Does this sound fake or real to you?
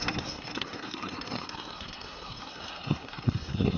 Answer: fake